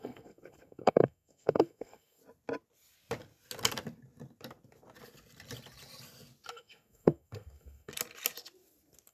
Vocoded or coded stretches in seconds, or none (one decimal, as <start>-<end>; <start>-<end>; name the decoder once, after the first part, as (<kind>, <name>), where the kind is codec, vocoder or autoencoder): 0.0-2.2 (codec, SNAC); 6.5-7.9